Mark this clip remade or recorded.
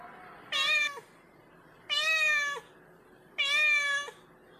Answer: recorded